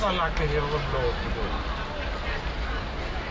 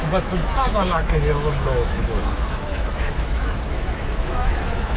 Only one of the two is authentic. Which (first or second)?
first